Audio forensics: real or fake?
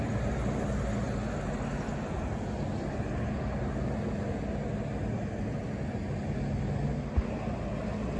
real